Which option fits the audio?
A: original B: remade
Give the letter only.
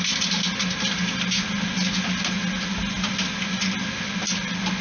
A